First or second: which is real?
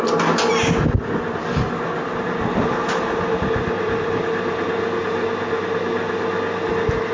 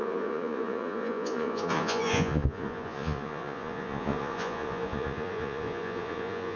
first